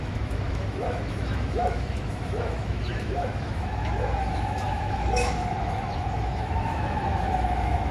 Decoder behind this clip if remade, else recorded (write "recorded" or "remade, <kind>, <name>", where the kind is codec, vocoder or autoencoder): remade, autoencoder, DAC-VAE